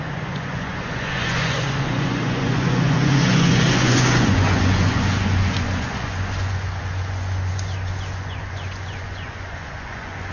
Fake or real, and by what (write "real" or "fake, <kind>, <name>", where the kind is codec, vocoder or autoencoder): fake, vocoder, Vocos